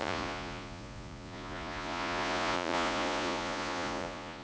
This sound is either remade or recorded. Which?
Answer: remade